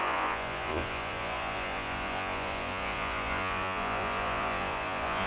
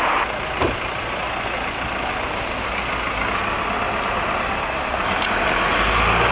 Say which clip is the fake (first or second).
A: first